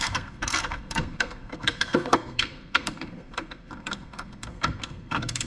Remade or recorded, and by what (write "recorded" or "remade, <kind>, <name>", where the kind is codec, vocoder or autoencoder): remade, codec, SNAC